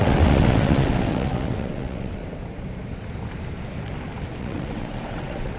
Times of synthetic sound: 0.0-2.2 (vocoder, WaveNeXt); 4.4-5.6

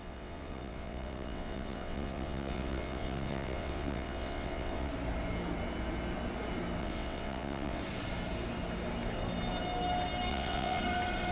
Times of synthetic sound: 0.0-4.9 (vocoder, WaveNeXt); 6.8-7.8; 10.3-10.8

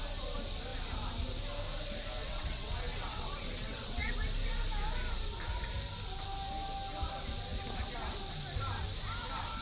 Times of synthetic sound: 2.2-4.1 (vocoder, WaveNeXt)